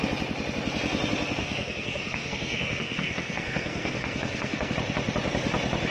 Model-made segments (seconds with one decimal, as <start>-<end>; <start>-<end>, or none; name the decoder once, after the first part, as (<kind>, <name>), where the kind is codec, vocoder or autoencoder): 1.4-4.7 (codec, SNAC)